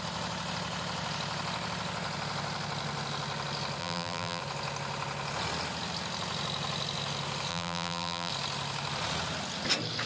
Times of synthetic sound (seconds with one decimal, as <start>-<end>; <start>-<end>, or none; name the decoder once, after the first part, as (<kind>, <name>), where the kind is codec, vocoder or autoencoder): 3.8-4.4 (vocoder, BigVGAN v2); 7.5-8.3